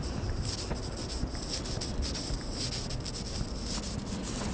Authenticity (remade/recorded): recorded